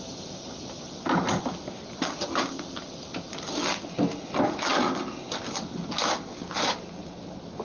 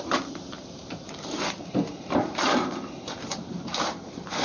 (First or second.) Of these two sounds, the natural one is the first